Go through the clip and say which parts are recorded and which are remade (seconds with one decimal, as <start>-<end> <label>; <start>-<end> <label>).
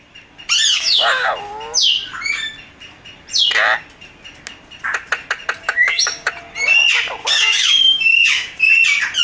0.0-0.7 recorded; 0.7-1.3 remade; 1.3-5.6 recorded; 5.6-6.3 remade; 6.3-7.2 recorded; 7.2-8.6 remade; 8.6-9.2 recorded